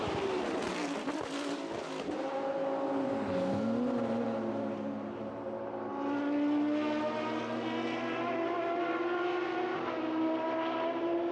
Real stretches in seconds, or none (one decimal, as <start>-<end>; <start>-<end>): 0.0-11.3